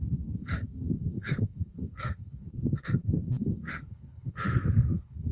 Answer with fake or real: fake